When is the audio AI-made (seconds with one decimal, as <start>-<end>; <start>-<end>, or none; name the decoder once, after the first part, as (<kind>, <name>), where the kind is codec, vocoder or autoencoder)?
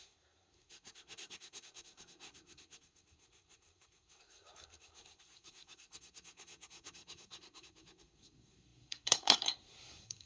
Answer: 0.0-10.3 (codec, SNAC)